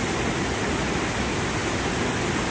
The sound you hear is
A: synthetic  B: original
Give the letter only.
B